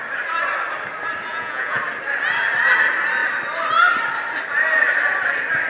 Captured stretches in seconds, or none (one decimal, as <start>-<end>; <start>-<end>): 0.0-1.3; 1.8-5.7